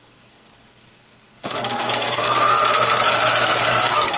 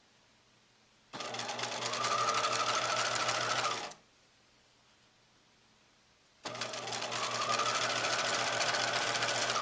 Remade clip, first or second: first